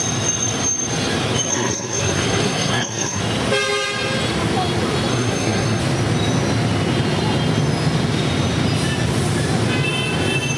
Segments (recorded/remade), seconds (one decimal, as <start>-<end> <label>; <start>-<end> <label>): 0.0-1.5 recorded; 1.5-3.2 remade; 3.2-5.1 recorded; 5.1-5.8 remade; 5.8-10.6 recorded